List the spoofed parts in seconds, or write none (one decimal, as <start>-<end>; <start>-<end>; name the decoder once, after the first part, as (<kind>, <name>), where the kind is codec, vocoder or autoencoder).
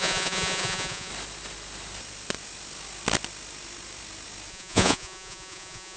0.0-1.1 (vocoder, Vocos); 4.5-6.0